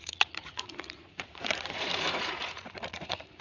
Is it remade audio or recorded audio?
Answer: remade